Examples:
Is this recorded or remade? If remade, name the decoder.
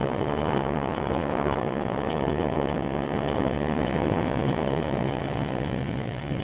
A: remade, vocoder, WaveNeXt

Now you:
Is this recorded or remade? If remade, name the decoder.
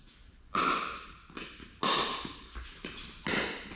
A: recorded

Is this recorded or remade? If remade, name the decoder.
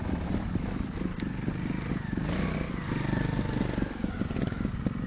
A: recorded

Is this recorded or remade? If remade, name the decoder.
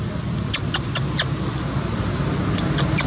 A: recorded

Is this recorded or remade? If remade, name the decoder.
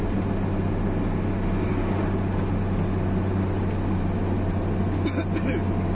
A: recorded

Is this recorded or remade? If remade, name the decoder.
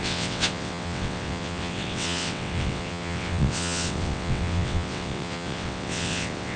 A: remade, vocoder, WaveNeXt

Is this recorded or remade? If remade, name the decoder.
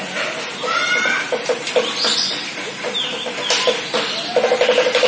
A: recorded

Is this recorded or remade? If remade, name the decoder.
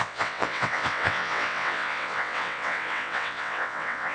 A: remade, vocoder, WaveNeXt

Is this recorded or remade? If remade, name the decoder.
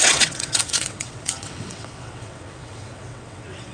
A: remade, vocoder, WaveNeXt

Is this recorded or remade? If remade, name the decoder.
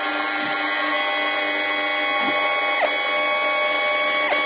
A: recorded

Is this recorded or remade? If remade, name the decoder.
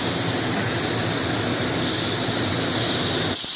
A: recorded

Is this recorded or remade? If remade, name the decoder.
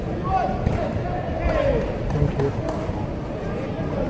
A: recorded